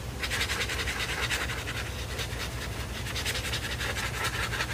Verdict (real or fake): real